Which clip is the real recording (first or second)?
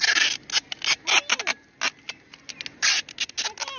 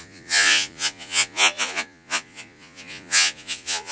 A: first